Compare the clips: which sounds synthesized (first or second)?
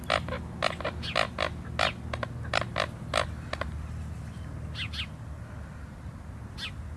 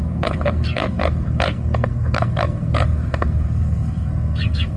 second